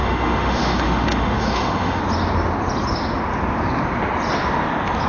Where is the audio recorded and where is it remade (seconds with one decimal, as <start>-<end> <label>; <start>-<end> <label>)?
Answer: 0.0-2.0 remade; 2.0-5.1 recorded